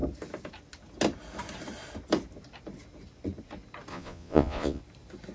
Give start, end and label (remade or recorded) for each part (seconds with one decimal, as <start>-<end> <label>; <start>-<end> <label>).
0.0-3.9 recorded; 3.9-4.8 remade; 4.8-5.3 recorded